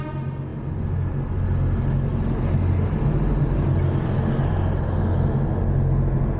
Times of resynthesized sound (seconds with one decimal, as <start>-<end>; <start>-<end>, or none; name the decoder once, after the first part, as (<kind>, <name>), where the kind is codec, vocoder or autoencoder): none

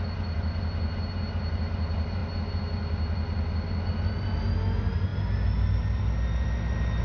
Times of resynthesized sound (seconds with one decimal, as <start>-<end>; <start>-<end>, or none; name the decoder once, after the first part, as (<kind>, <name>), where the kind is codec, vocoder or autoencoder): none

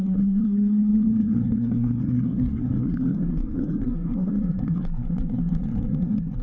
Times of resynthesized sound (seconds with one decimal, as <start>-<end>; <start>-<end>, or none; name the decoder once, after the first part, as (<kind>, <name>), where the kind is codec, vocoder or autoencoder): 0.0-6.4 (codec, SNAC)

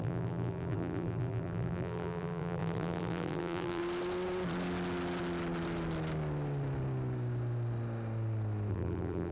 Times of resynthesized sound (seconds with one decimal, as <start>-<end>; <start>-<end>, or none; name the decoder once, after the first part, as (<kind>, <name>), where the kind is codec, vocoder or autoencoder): 0.0-3.8 (vocoder, BigVGAN v2); 8.7-9.3